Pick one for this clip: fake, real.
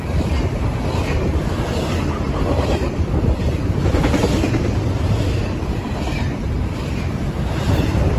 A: fake